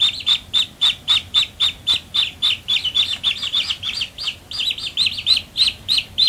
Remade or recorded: remade